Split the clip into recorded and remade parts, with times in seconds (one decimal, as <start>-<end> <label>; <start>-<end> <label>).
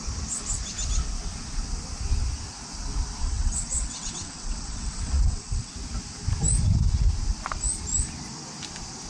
0.0-3.2 recorded; 3.2-5.7 remade; 5.7-9.1 recorded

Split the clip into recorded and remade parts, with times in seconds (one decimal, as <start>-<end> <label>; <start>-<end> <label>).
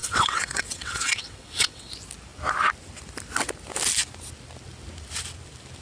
0.0-1.9 remade; 1.9-5.8 recorded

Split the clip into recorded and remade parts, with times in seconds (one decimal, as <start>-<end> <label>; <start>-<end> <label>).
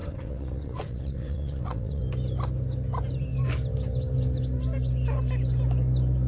0.0-2.0 remade; 2.0-6.3 recorded